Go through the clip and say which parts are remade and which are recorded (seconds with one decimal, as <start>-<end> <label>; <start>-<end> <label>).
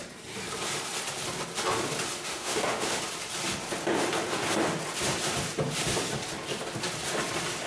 0.0-2.3 recorded; 2.3-3.0 remade; 3.0-7.7 recorded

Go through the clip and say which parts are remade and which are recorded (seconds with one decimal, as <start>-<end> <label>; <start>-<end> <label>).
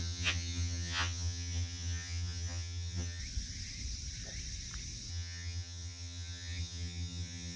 0.0-3.2 remade; 3.2-5.1 recorded; 5.1-7.6 remade